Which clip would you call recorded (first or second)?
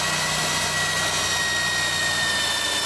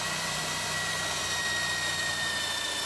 first